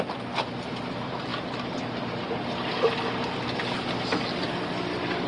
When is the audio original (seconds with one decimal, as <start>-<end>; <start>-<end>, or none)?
0.0-5.3